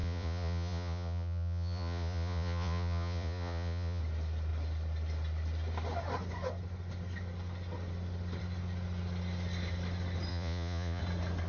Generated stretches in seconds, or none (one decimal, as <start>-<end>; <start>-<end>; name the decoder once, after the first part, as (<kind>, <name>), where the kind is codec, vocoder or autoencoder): 0.0-4.0 (vocoder, Vocos); 10.3-11.0